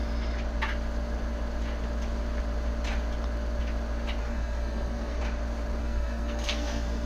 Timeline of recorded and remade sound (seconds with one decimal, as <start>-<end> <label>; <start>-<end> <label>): 0.0-4.2 recorded; 4.2-5.2 remade; 5.2-5.8 recorded; 5.8-7.1 remade